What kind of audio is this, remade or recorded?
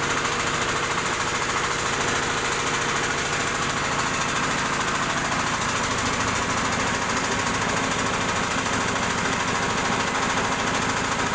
recorded